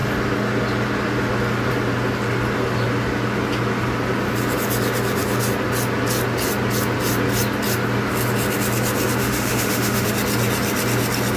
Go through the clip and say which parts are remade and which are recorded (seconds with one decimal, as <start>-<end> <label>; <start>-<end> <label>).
0.0-9.2 recorded; 9.2-10.1 remade; 10.1-11.4 recorded

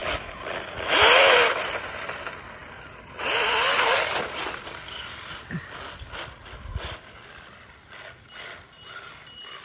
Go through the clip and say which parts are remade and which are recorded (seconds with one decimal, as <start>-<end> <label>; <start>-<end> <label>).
0.0-9.6 recorded

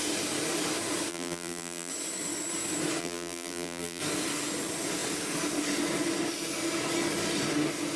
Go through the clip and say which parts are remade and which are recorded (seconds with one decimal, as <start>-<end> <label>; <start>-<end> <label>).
0.0-1.1 recorded; 1.1-1.9 remade; 1.9-3.0 recorded; 3.0-4.0 remade; 4.0-8.0 recorded

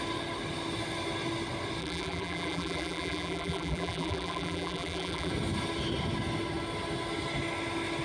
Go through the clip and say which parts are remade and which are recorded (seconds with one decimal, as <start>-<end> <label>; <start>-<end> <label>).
0.0-1.8 recorded; 1.8-5.3 remade; 5.3-8.0 recorded

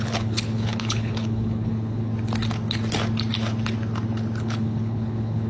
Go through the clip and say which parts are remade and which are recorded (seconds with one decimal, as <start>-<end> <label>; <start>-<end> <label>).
0.0-2.1 remade; 2.1-4.4 recorded; 4.4-5.5 remade

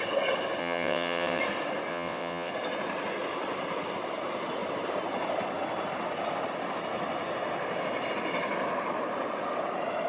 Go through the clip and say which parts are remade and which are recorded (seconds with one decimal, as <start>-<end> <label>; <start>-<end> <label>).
0.0-0.6 recorded; 0.6-1.4 remade; 1.4-1.9 recorded; 1.9-2.5 remade; 2.5-10.1 recorded

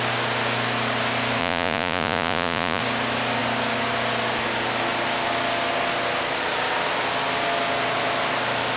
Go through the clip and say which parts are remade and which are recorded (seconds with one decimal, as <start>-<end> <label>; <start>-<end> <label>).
0.0-1.4 recorded; 1.4-2.8 remade; 2.8-8.8 recorded